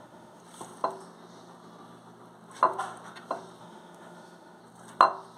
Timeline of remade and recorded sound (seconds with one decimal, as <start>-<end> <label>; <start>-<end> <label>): 0.0-0.4 remade; 0.4-3.6 recorded; 3.6-4.6 remade; 4.6-5.4 recorded